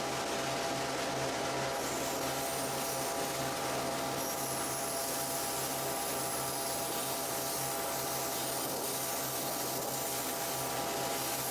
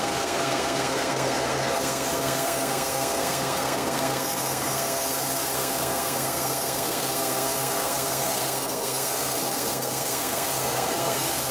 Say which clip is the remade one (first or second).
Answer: second